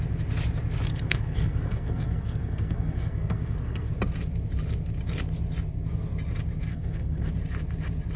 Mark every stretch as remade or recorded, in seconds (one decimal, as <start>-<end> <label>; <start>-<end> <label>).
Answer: 0.0-0.9 recorded; 0.9-3.9 remade; 3.9-6.7 recorded; 6.7-7.3 remade; 7.3-8.2 recorded